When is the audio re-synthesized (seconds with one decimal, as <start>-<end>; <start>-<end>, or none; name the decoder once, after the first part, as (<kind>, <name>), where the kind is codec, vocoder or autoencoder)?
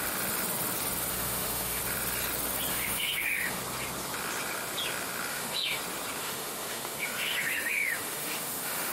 1.1-1.8 (autoencoder, DAC-VAE); 2.7-3.6; 5.3-5.8; 6.2-8.9